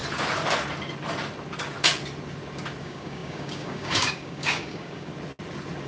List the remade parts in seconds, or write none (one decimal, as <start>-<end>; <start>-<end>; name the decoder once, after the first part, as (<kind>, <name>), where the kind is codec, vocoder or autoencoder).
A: 2.8-5.1 (codec, DAC)